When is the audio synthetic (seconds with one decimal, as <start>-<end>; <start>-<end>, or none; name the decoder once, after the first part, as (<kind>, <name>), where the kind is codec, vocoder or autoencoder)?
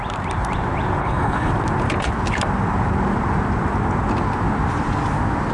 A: 1.0-1.5 (codec, HILCodec)